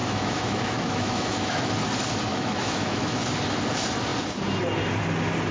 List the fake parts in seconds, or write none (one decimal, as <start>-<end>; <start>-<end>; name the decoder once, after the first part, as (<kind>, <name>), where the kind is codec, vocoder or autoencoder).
0.0-1.7 (autoencoder, DAC-VAE); 2.3-3.2